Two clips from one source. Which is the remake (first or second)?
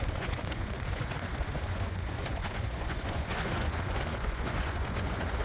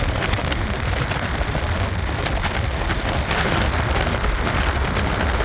first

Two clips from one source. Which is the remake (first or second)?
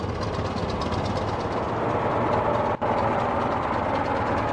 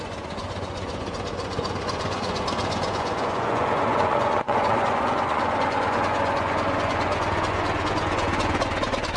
second